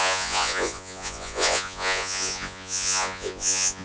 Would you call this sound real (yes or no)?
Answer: no